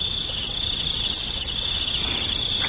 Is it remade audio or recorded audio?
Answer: recorded